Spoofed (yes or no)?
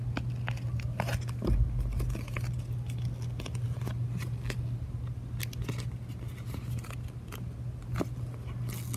no